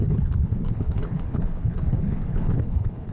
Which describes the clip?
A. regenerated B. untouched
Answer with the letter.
A